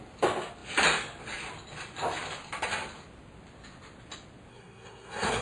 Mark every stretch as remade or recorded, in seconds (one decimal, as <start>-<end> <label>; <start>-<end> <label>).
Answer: 0.0-4.5 recorded; 4.5-5.4 remade